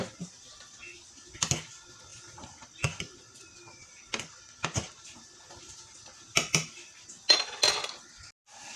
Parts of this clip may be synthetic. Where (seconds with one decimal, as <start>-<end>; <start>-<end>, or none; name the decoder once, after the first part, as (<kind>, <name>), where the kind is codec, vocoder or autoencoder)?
none

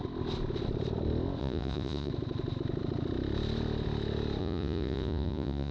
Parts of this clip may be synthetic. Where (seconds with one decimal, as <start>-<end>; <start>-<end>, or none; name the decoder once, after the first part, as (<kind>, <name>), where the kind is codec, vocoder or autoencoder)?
1.4-2.1 (vocoder, Vocos); 4.4-5.7

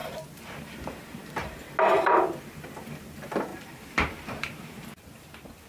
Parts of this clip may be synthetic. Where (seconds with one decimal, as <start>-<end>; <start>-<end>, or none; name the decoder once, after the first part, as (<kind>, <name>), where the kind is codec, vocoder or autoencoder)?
0.0-1.6 (vocoder, BigVGAN v2); 3.5-4.8

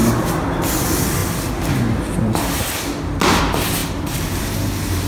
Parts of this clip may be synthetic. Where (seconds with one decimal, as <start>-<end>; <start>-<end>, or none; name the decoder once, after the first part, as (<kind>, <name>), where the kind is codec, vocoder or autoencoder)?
none

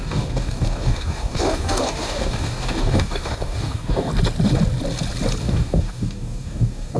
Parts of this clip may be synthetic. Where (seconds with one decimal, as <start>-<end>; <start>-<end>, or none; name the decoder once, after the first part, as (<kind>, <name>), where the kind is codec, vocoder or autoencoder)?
0.0-4.1 (codec, DAC); 5.4-7.0